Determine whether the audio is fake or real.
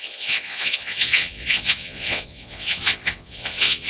fake